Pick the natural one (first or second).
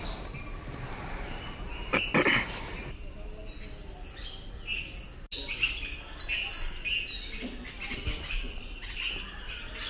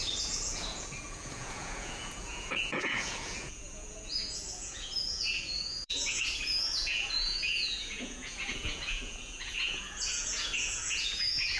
first